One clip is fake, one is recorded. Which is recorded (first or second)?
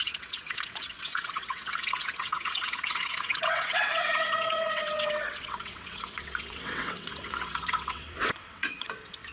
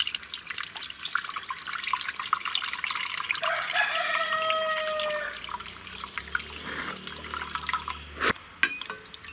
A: second